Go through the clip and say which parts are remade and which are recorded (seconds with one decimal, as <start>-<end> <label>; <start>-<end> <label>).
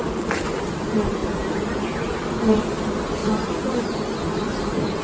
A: 0.0-5.0 recorded